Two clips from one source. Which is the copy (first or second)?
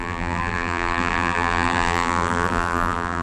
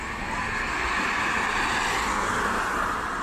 first